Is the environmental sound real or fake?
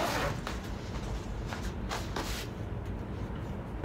real